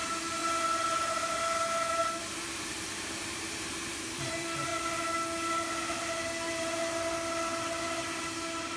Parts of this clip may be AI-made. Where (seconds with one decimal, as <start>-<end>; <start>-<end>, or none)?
0.0-0.4; 2.2-4.7; 5.9-6.8; 8.2-8.8